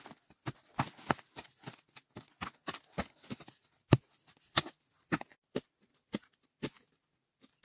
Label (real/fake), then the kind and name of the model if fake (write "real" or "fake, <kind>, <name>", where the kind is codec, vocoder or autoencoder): real